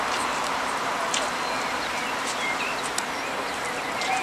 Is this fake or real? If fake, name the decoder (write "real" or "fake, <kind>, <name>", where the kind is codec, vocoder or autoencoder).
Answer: real